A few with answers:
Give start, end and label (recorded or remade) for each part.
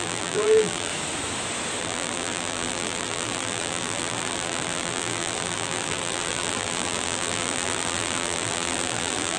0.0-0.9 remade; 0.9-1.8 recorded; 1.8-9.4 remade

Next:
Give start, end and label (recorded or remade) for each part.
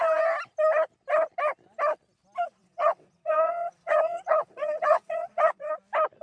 0.0-2.6 recorded; 2.6-5.7 remade; 5.7-6.2 recorded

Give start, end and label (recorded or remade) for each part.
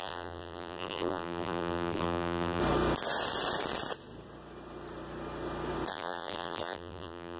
0.0-2.6 remade; 2.6-5.9 recorded; 5.9-7.4 remade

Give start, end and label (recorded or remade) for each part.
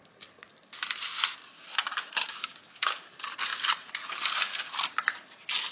0.0-1.5 recorded; 1.5-3.0 remade; 3.0-5.7 recorded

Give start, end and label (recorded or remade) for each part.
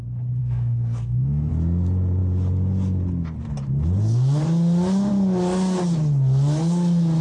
0.0-0.4 recorded; 0.4-1.5 remade; 1.5-7.2 recorded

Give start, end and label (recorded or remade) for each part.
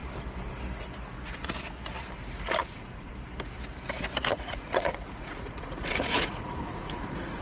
0.0-2.6 recorded; 2.6-3.1 remade; 3.1-4.3 recorded; 4.3-7.4 remade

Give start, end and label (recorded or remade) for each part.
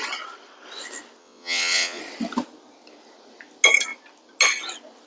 0.0-1.2 recorded; 1.2-2.0 remade; 2.0-5.1 recorded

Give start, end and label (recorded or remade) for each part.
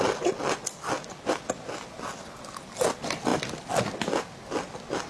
0.0-5.1 recorded